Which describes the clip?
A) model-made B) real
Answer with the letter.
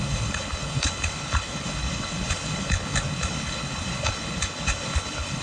A